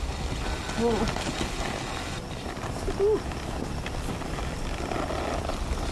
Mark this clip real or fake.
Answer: real